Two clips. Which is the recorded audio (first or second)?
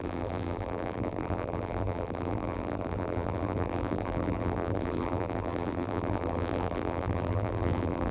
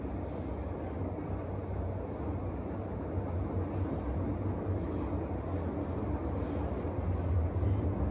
second